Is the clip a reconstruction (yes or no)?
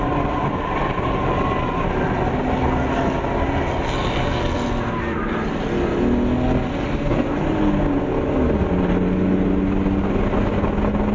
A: no